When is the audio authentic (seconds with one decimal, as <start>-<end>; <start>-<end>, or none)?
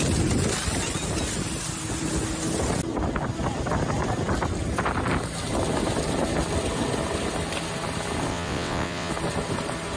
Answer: 0.0-8.3; 9.1-10.0